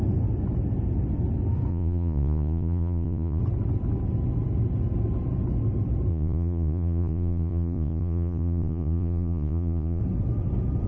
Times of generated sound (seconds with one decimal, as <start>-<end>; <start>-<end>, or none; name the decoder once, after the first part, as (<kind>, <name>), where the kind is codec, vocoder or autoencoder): 1.7-3.4 (vocoder, Vocos); 6.1-10.0